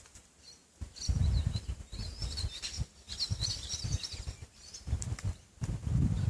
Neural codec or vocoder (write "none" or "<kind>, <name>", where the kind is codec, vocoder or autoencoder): none